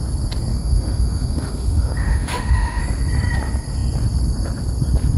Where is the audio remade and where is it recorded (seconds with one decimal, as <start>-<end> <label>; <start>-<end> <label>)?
0.0-0.5 recorded; 0.5-2.8 remade; 2.8-5.2 recorded